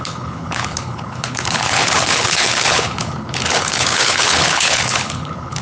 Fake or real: fake